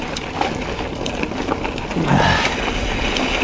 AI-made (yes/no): no